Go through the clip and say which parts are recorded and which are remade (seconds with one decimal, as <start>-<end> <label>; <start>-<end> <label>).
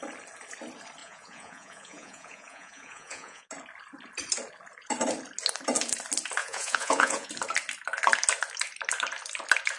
0.0-1.0 recorded; 1.0-3.5 remade; 3.5-6.4 recorded; 6.4-7.3 remade; 7.3-9.8 recorded